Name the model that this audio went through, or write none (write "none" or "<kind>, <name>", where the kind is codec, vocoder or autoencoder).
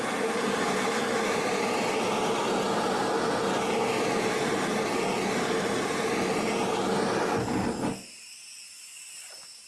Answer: none